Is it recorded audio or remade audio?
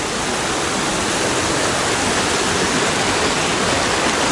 recorded